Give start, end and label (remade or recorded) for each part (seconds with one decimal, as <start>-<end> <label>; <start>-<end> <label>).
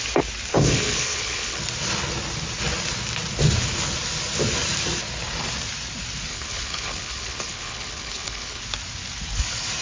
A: 0.0-0.5 recorded; 0.5-1.6 remade; 1.6-6.3 recorded; 6.3-8.6 remade; 8.6-9.8 recorded